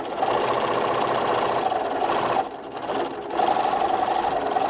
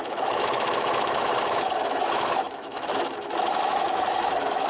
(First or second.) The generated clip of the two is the second